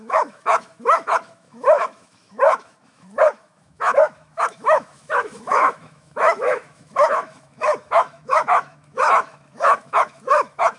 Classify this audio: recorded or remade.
remade